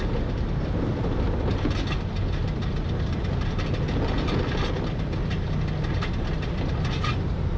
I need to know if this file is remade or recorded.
recorded